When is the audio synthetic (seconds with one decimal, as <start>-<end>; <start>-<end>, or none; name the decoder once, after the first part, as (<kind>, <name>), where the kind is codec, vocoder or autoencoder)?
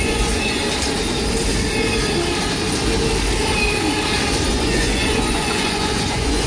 0.0-0.6 (vocoder, Vocos); 4.5-6.5